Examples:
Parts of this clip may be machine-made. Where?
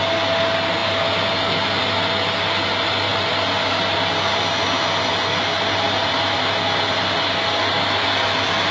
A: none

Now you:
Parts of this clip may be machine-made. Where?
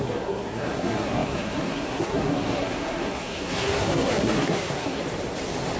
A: 0.0-5.0 (codec, SNAC)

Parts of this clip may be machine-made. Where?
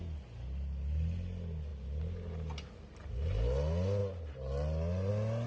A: none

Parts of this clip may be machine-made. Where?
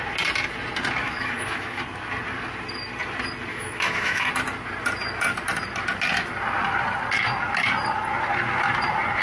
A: 1.0-1.8 (autoencoder, DAC-VAE); 3.5-4.3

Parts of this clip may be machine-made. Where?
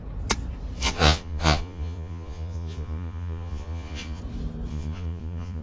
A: 0.8-4.2 (vocoder, Vocos); 4.7-5.6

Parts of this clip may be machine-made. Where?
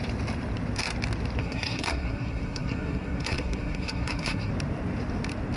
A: 1.4-4.5 (codec, SNAC)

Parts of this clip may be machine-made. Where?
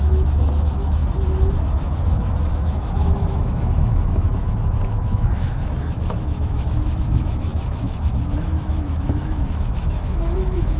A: 0.0-1.0 (autoencoder, DAC-VAE); 1.7-10.8